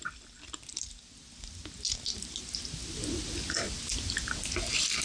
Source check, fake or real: real